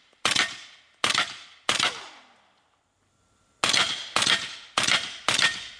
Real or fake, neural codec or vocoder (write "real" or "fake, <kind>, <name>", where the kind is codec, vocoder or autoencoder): real